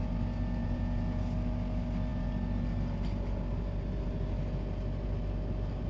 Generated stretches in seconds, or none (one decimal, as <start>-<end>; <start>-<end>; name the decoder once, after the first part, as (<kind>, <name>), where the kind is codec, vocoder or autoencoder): 0.6-1.2 (vocoder, Vocos)